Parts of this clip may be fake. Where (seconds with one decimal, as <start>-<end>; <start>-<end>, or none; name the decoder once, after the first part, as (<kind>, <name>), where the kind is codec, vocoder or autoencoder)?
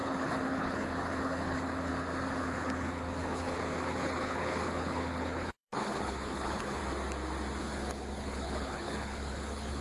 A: 0.0-1.9 (codec, HILCodec); 2.4-6.8; 7.6-9.8